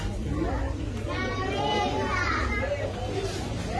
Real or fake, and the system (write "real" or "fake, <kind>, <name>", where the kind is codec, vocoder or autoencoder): real